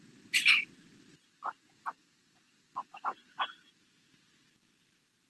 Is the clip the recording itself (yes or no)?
yes